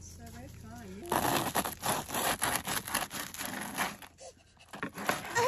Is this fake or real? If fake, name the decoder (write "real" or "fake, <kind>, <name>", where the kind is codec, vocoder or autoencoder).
real